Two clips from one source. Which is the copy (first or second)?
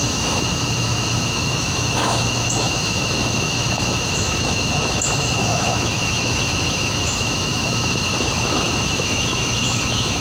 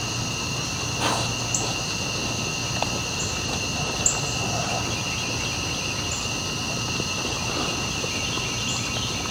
first